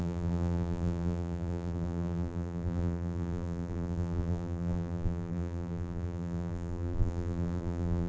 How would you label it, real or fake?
fake